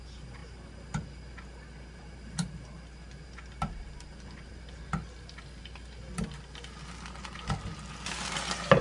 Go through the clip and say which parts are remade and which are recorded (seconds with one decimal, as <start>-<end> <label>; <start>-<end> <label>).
0.0-8.8 recorded